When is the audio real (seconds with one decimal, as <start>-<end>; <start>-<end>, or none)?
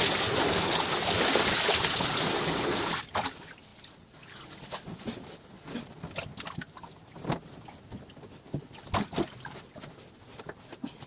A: 0.0-11.1